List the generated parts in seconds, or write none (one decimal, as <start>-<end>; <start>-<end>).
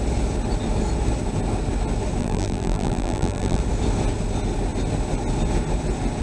2.2-3.6